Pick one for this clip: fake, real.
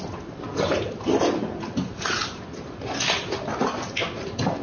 real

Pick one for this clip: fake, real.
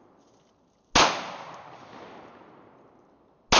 real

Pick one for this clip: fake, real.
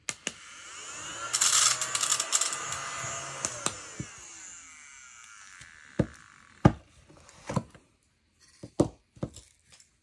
real